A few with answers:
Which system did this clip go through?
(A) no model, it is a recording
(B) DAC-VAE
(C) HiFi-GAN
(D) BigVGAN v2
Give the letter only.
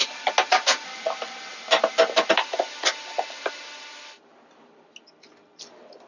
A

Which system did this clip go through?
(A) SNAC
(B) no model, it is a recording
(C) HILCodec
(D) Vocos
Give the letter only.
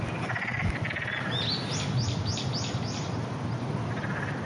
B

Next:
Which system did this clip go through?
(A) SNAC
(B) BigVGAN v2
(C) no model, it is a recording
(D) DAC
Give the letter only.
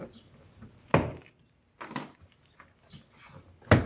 C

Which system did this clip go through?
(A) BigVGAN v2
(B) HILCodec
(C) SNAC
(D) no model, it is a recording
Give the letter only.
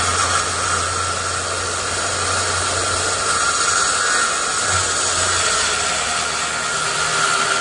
D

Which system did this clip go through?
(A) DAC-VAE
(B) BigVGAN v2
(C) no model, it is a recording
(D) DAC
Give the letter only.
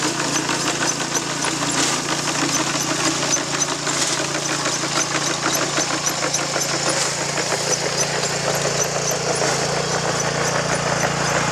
C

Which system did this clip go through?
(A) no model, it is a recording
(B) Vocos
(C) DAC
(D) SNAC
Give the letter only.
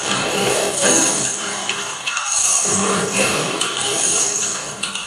C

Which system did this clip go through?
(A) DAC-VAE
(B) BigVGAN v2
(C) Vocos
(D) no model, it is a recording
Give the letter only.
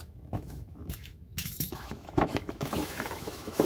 A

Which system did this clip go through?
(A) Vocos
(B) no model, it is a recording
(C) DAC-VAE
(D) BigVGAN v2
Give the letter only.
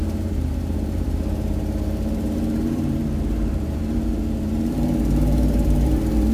D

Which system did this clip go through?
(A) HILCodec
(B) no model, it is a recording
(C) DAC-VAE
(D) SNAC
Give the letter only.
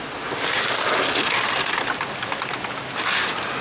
B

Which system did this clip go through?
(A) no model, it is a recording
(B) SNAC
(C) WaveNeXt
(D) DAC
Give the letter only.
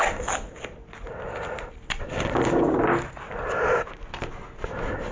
A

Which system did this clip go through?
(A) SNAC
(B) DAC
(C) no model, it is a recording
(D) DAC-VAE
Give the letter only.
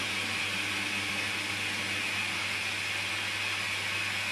C